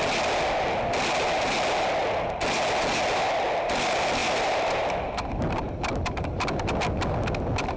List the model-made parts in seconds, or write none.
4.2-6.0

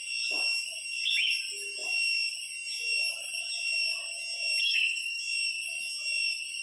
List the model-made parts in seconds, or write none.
4.6-5.2

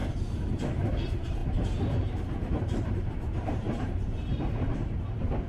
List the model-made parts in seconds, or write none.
0.9-5.5

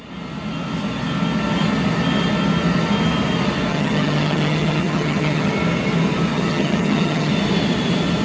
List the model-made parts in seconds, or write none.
3.7-5.5; 6.3-7.3

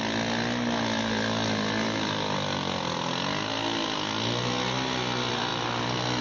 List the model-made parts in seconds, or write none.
none

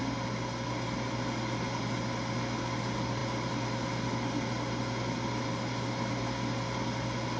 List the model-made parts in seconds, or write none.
none

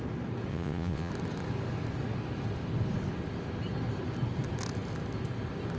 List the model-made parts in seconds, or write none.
0.5-1.1